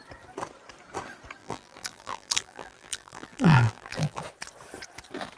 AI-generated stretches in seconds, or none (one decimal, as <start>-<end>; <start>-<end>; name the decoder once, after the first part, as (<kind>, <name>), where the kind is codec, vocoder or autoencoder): 1.4-4.2 (vocoder, BigVGAN v2)